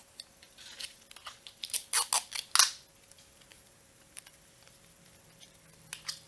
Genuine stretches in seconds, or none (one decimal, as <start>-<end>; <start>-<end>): 0.0-3.5; 4.2-6.3

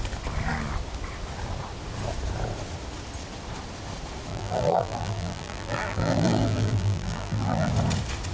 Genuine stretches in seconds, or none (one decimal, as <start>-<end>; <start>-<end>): 0.0-4.3; 7.7-8.3

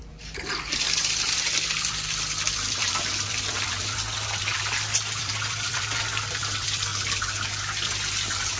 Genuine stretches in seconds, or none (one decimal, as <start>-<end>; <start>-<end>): 6.9-7.7

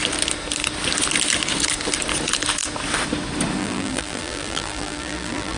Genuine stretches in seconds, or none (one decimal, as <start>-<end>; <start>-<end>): 0.0-3.6

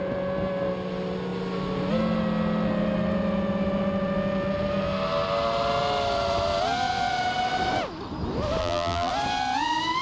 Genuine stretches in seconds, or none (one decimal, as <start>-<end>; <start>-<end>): 0.0-8.6; 9.1-10.0

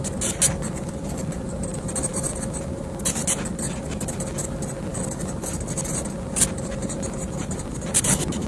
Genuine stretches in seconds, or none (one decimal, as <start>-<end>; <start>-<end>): 0.0-1.7; 2.3-8.5

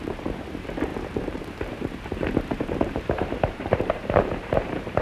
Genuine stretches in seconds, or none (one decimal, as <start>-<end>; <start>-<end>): none

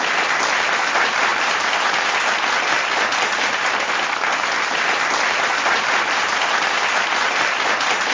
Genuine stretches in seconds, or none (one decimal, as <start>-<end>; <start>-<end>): 0.0-8.1